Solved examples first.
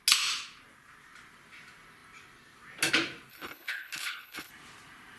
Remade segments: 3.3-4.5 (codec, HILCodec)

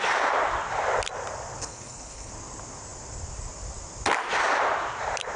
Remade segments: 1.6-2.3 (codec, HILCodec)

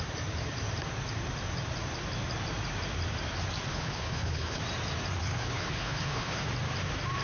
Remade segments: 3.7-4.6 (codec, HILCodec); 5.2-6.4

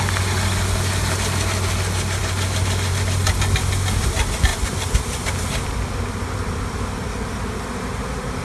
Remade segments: none

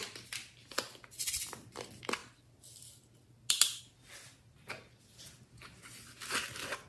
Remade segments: none